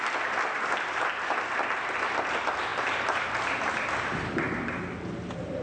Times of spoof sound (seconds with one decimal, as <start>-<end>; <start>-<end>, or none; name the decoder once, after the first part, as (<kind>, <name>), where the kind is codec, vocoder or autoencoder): none